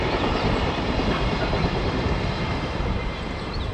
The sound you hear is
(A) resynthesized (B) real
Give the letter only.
A